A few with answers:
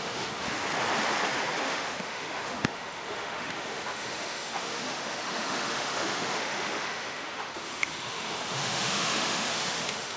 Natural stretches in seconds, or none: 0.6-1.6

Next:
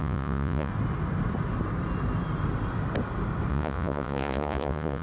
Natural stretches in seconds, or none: 0.7-3.5

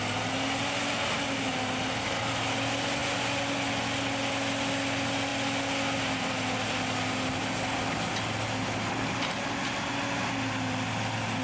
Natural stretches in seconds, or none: 0.0-11.4

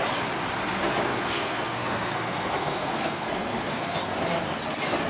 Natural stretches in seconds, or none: 0.0-1.1; 4.0-5.1

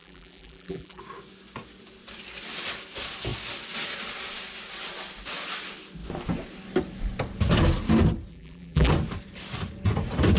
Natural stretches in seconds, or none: 1.0-8.3; 8.9-10.4

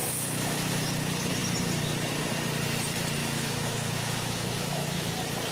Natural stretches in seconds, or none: 0.7-3.2; 5.1-5.5

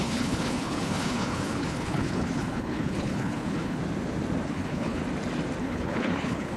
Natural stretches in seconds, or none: 3.8-4.5; 5.0-5.6